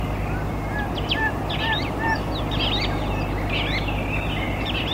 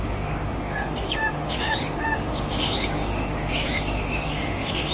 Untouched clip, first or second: first